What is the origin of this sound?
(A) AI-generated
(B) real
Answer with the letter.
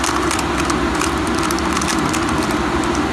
B